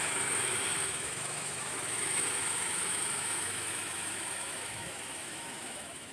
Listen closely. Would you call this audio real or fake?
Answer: fake